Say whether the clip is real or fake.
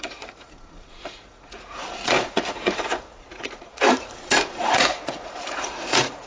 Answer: fake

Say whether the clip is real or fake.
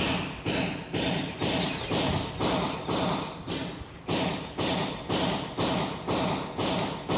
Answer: real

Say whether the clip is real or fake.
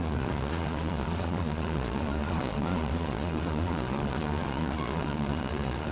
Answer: fake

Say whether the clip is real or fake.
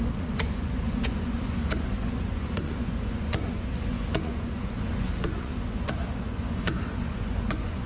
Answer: fake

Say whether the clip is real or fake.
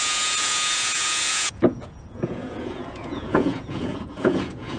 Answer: fake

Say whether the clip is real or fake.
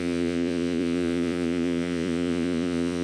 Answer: fake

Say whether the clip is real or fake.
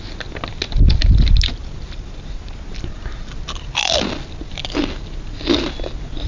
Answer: real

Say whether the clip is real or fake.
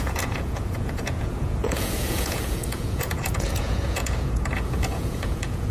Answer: fake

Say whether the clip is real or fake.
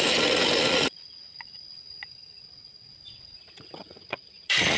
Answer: fake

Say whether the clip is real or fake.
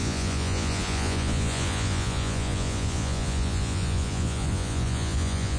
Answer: fake